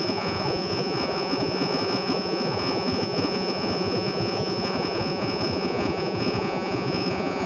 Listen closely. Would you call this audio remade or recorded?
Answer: remade